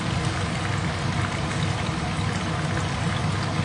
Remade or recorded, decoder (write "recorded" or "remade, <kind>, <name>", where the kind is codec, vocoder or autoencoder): recorded